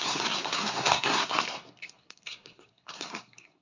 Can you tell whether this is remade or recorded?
remade